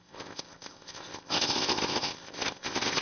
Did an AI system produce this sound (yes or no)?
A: yes